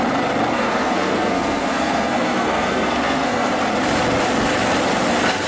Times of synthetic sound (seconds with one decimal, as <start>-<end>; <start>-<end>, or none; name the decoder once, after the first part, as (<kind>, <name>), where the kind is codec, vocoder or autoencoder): 0.5-3.5 (codec, SNAC)

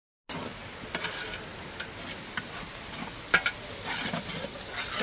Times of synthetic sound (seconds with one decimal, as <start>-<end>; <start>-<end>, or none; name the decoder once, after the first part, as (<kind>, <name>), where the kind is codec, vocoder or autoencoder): none

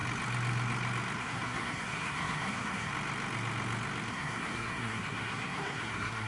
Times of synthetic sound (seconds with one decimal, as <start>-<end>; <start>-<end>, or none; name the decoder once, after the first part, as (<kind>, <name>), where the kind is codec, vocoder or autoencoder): 1.2-2.9 (codec, SNAC); 4.1-6.3